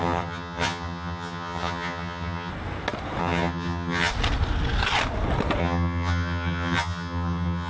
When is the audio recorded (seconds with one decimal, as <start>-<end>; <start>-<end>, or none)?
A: 2.5-3.2; 4.1-5.6